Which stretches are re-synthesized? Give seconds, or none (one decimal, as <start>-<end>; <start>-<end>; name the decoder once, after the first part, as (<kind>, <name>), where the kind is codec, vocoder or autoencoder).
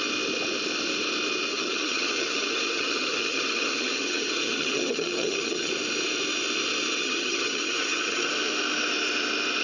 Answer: 1.5-5.7 (vocoder, HiFi-GAN); 7.0-8.3